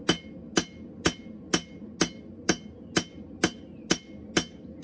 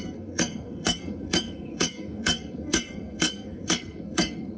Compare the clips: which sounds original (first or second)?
first